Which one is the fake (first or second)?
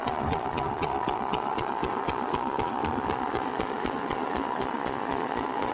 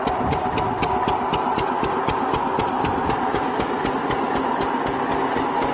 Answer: first